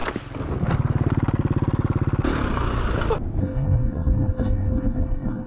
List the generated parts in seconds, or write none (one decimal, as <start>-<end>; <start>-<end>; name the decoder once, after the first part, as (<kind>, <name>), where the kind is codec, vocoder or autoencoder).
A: 3.4-5.5 (codec, SNAC)

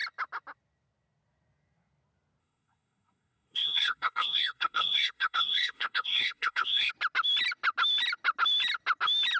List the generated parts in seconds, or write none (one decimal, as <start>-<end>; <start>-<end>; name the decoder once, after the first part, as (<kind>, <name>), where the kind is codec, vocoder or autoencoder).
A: 2.4-6.9 (codec, SNAC)

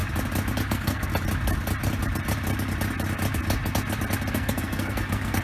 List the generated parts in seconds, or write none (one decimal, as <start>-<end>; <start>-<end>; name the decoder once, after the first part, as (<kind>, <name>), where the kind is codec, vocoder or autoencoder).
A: 0.7-1.1 (codec, SNAC); 4.3-5.4

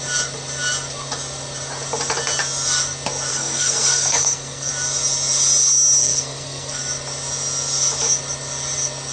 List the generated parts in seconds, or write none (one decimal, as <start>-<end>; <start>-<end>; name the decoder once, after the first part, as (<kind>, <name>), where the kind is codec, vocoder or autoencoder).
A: 3.3-4.7 (codec, SNAC); 6.0-6.8

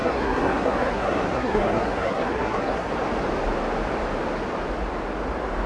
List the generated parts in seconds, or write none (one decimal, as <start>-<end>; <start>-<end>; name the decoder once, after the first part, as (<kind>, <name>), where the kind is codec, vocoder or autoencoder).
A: 0.0-2.9 (codec, SNAC)